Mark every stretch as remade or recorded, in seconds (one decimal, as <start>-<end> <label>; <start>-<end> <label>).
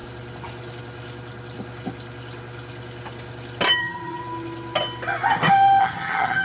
0.0-3.8 recorded; 3.8-4.2 remade; 4.2-5.8 recorded; 5.8-6.4 remade